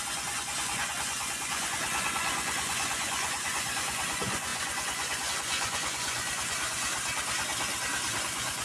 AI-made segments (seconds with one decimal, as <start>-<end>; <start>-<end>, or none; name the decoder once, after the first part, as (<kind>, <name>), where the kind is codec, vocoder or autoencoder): 0.0-6.9 (vocoder, Vocos); 8.2-8.6